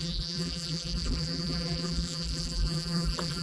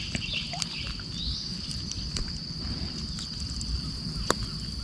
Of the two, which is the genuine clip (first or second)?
second